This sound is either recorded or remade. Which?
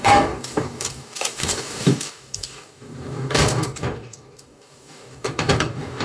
remade